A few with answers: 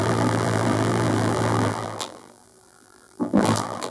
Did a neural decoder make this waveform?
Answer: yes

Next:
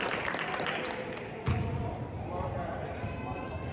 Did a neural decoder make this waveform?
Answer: yes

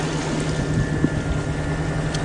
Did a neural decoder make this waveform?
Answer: no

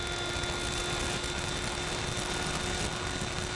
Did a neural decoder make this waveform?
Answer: no